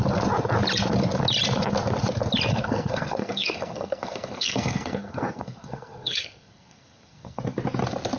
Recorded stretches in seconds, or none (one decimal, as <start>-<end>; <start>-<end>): 0.0-2.5; 7.4-8.2